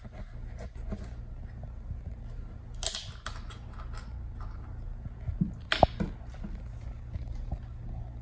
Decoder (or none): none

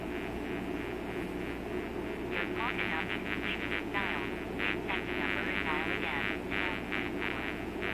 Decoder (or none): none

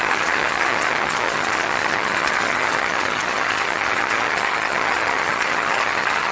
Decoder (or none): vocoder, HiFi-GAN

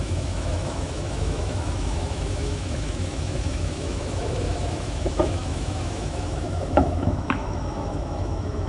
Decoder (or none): autoencoder, DAC-VAE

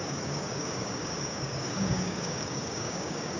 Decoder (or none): codec, DAC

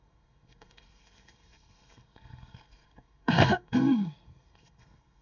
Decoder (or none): codec, SNAC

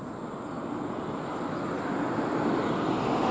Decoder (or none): none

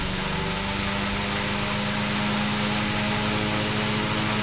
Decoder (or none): none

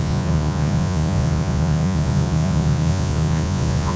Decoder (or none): vocoder, Vocos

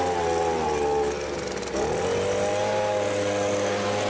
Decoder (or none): none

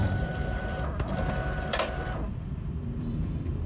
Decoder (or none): vocoder, BigVGAN v2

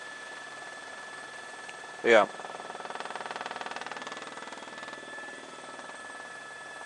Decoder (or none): none